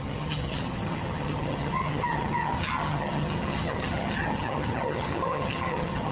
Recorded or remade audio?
remade